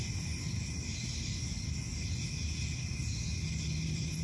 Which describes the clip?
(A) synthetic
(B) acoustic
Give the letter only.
B